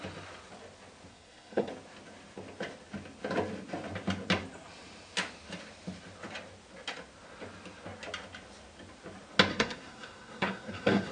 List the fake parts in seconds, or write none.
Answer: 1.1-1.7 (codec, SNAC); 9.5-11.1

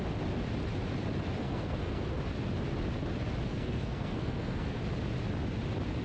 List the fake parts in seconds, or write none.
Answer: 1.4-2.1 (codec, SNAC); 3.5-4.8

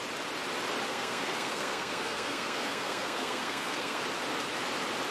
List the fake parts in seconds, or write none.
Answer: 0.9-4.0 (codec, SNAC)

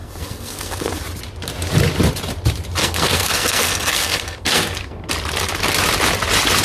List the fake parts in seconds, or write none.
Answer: 0.0-1.0 (codec, SNAC); 2.8-5.1

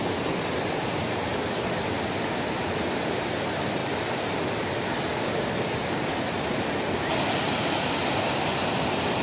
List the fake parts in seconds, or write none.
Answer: none

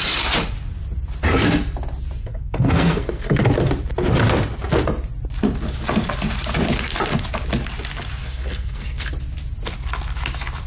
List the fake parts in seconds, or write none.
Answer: 2.2-3.4 (codec, SNAC); 8.2-9.1